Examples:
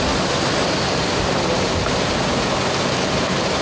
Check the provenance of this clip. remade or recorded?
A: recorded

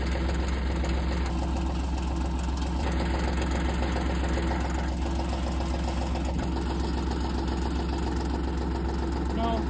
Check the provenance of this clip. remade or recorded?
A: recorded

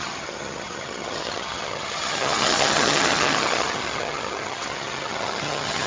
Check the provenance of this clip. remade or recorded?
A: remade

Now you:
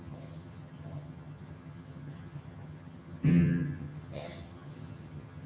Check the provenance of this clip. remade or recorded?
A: remade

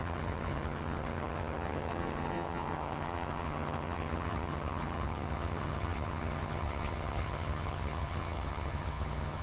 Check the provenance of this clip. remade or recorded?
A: remade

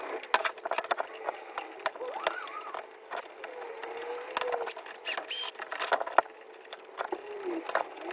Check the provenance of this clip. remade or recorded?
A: recorded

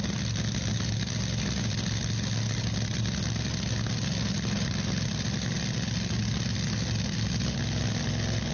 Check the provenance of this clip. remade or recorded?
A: recorded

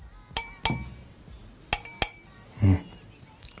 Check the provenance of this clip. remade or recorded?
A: recorded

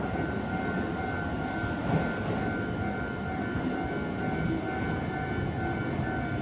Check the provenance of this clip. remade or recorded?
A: recorded